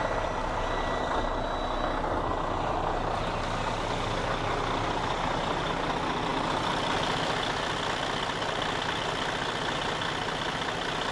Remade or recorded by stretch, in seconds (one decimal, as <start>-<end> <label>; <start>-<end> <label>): 0.0-11.1 recorded